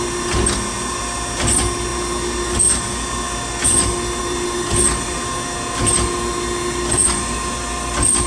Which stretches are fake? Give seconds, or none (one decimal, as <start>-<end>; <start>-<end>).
none